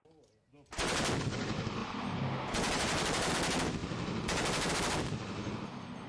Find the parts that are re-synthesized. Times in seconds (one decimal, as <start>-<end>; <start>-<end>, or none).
none